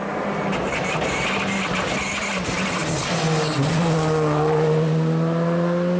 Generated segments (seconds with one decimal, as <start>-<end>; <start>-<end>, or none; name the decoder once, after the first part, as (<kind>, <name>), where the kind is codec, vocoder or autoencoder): none